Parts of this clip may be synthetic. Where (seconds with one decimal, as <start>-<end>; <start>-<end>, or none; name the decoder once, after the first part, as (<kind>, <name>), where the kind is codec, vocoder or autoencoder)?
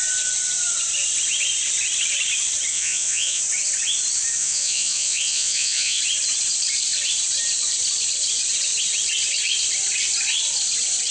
2.7-3.4 (vocoder, Vocos); 4.4-6.0